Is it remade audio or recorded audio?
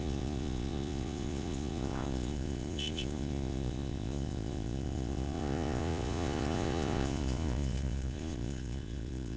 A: remade